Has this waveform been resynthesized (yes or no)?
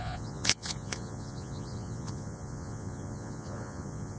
yes